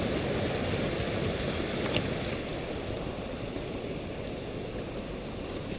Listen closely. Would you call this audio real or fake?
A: real